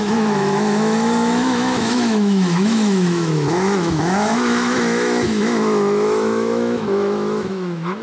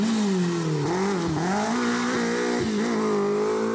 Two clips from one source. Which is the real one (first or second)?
second